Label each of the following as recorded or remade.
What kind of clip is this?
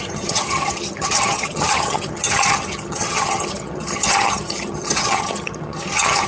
remade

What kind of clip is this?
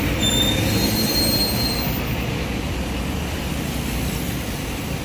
recorded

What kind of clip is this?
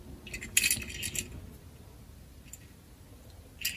recorded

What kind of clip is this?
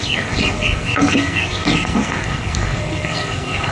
remade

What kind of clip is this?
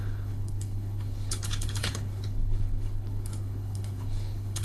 remade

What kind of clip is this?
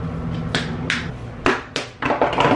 recorded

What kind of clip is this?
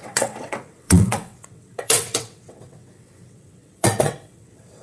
remade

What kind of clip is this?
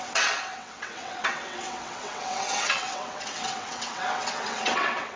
remade